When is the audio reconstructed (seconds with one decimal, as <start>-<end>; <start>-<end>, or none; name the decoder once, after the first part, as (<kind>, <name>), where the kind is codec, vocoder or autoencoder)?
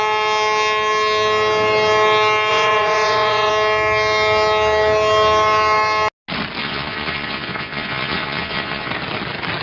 2.5-3.5 (vocoder, Vocos); 6.6-8.9